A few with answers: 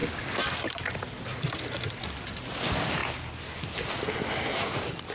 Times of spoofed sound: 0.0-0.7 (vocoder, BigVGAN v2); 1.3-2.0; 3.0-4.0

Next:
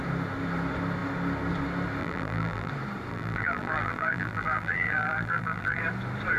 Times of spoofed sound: 2.0-2.7 (vocoder, BigVGAN v2); 3.1-5.8

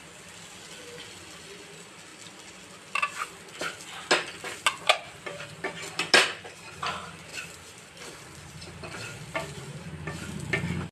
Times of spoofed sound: none

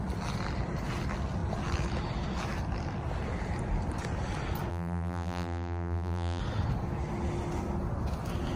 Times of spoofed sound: 4.7-6.4 (vocoder, BigVGAN v2)

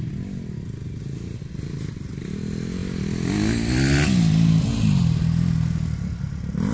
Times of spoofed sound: none

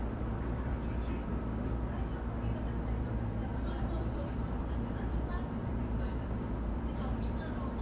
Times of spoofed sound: 0.0-0.7 (vocoder, BigVGAN v2); 3.0-7.8

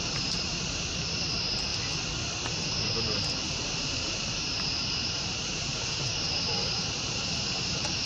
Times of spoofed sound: 0.0-1.7 (vocoder, BigVGAN v2); 3.3-8.0

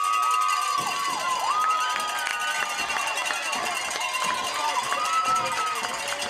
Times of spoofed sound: none